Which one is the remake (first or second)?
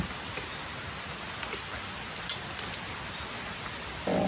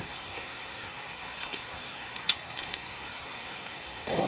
second